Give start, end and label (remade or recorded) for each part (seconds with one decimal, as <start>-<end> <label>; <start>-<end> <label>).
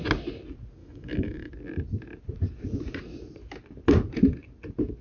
0.0-0.8 recorded; 0.8-1.5 remade; 1.5-5.0 recorded